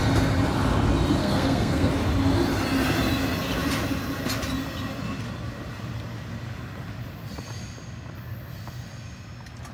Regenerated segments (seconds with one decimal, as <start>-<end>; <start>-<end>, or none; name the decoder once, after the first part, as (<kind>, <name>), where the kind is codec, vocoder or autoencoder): 1.2-1.9 (codec, SNAC)

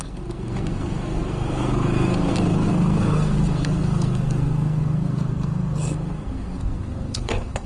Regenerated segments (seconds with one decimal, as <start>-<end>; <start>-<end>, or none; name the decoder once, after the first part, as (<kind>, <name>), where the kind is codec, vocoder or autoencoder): 0.0-7.7 (codec, SNAC)